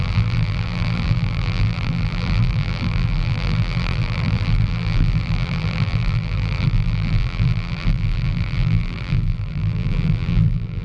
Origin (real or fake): fake